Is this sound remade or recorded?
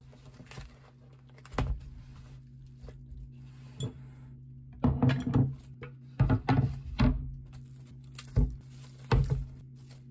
recorded